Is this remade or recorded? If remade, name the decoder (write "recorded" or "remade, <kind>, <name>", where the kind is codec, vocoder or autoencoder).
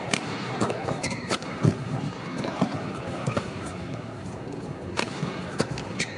remade, codec, SNAC